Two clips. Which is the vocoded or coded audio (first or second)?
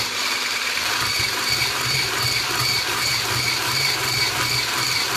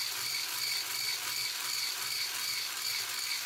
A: first